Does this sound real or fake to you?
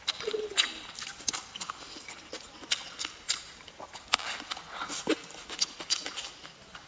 real